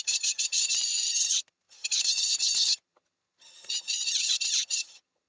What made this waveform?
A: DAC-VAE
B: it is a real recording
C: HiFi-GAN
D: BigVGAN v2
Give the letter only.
C